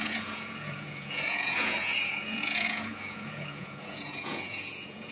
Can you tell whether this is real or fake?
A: fake